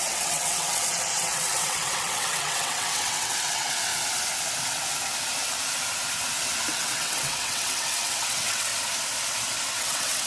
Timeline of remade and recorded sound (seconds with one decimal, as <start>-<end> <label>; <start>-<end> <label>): 0.0-3.9 remade; 3.9-6.7 recorded; 6.7-8.7 remade; 8.7-9.7 recorded; 9.7-10.3 remade